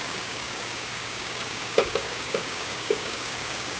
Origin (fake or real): fake